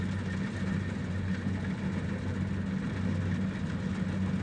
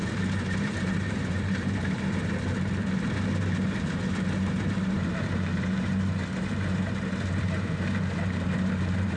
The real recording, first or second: first